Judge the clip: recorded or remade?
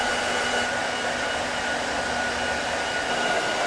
recorded